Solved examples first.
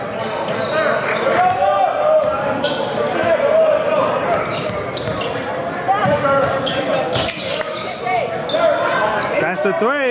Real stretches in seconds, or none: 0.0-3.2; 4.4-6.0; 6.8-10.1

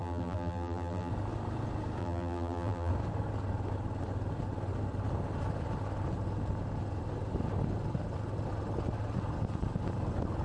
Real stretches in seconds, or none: 1.1-2.0; 2.9-10.4

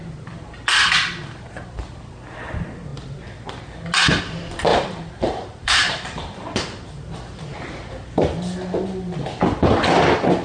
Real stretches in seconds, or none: 0.0-4.7; 7.1-10.4

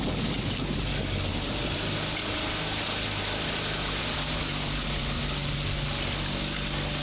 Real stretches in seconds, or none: 0.0-1.3; 5.0-7.0

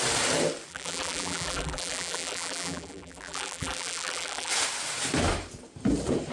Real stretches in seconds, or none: 0.0-0.7; 4.5-6.3

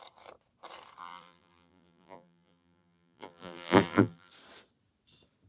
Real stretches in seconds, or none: 0.0-1.0; 4.3-5.5